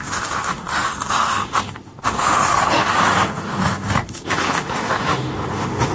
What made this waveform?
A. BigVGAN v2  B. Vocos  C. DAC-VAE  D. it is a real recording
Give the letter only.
C